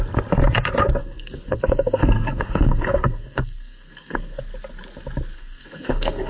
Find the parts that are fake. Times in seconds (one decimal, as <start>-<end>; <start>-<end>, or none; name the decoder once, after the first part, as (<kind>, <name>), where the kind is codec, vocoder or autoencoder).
1.0-4.4 (codec, SNAC); 5.3-6.3